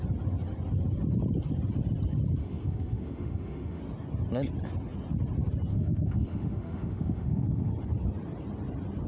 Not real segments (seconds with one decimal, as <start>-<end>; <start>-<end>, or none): 2.4-3.8; 5.7-7.7